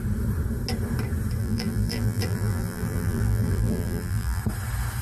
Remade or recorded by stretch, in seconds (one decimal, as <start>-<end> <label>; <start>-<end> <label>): 0.0-1.4 recorded; 1.4-4.4 remade; 4.4-5.0 recorded

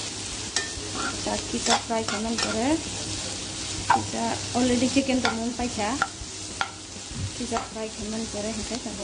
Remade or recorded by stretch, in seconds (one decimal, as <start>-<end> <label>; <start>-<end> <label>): 0.0-5.5 recorded; 5.5-6.5 remade; 6.5-9.0 recorded